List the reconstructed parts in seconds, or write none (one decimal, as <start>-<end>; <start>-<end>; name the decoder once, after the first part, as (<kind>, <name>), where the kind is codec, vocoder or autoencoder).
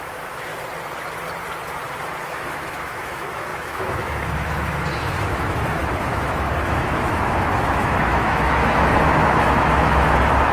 0.0-0.5 (autoencoder, DAC-VAE); 2.2-10.5